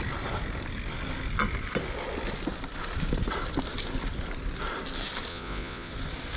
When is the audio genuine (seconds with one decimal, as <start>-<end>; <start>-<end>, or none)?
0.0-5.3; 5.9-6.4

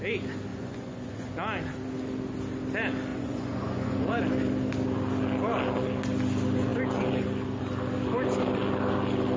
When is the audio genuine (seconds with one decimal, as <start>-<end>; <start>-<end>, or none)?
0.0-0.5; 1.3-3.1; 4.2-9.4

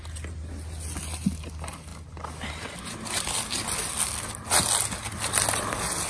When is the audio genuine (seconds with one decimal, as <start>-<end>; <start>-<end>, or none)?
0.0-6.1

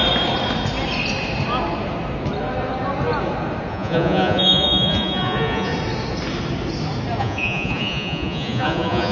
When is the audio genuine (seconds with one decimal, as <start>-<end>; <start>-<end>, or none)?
0.0-3.7; 5.7-7.2

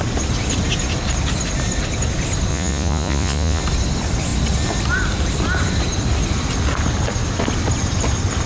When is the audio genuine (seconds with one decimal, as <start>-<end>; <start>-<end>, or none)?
0.0-2.5; 3.6-8.5